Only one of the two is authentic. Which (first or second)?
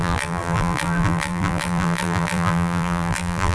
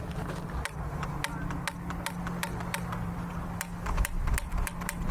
second